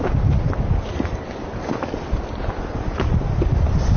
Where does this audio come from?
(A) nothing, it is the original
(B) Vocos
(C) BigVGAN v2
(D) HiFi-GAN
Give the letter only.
A